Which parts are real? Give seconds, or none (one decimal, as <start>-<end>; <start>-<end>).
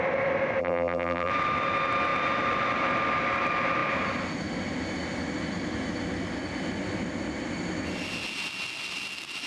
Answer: 0.0-0.6; 1.3-9.5